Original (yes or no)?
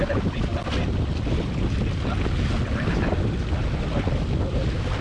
yes